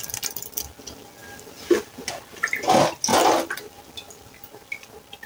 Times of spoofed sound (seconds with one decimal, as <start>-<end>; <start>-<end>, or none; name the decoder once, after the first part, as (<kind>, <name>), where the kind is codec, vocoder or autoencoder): none